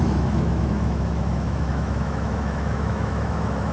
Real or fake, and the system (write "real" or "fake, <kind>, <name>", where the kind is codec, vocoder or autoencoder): fake, autoencoder, DAC-VAE